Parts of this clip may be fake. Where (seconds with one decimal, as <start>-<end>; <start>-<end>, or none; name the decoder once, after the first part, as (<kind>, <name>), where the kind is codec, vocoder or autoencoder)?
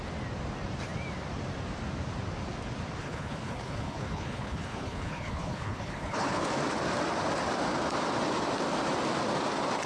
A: 3.0-6.5 (codec, HILCodec)